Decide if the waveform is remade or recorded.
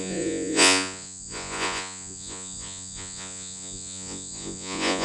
remade